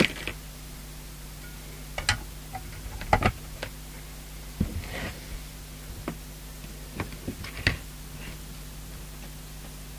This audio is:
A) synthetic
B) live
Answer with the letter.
B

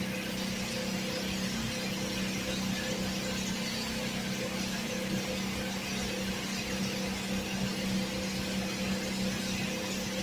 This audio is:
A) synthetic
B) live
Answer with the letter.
B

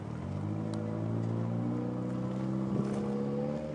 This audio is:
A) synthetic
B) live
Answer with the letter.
B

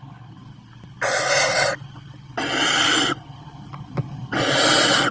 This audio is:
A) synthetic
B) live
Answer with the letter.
B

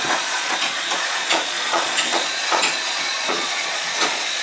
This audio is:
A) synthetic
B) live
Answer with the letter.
A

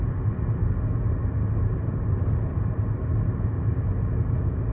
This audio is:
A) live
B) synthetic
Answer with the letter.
A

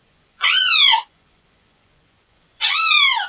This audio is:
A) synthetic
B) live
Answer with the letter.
A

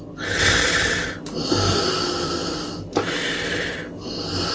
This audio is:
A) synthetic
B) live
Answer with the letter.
B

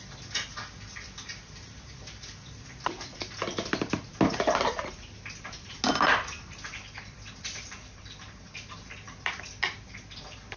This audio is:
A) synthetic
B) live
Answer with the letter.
B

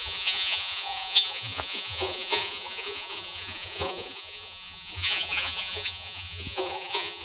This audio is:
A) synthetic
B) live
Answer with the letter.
A